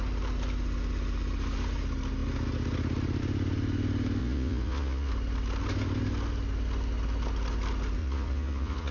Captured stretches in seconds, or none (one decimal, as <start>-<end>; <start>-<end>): 0.0-4.2; 5.1-8.0